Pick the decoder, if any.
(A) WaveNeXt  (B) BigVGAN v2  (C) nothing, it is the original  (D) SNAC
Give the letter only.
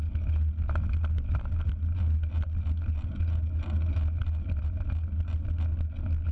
C